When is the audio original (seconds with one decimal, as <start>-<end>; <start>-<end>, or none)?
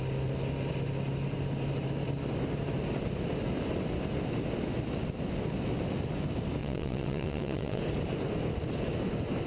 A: 0.0-6.6; 7.8-9.5